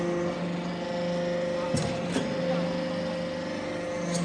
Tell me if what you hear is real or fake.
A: real